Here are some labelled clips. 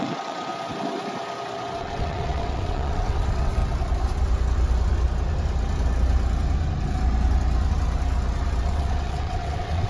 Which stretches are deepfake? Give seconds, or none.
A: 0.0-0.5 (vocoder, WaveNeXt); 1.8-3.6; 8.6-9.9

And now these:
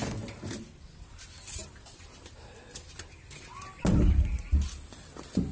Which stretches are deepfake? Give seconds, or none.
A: none

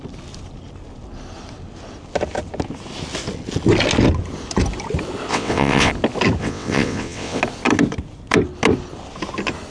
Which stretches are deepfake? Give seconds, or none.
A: 5.3-5.9 (vocoder, WaveNeXt); 6.4-7.4

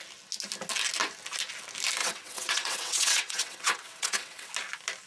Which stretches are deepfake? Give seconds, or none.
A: 2.0-4.5 (vocoder, WaveNeXt)

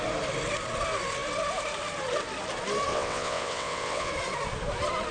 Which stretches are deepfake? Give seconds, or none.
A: 2.9-4.1 (vocoder, WaveNeXt)

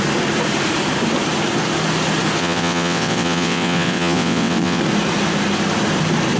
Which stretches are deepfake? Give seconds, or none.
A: 2.4-4.8 (vocoder, WaveNeXt)

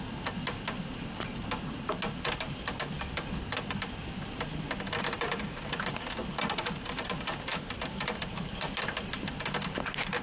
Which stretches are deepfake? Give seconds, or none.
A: none

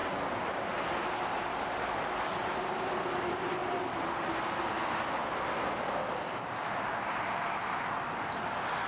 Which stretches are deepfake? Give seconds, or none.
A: none